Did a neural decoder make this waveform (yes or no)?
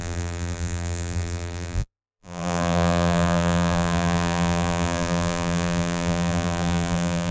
yes